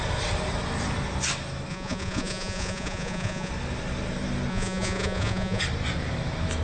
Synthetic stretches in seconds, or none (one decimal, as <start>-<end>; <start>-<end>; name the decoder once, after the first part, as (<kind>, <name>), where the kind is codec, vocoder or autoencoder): 1.7-3.5 (vocoder, Vocos); 4.5-5.6